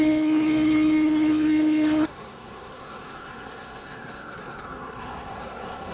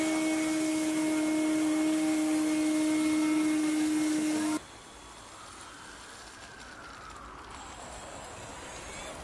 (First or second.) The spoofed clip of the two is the first